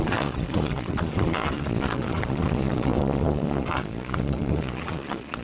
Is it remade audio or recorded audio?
remade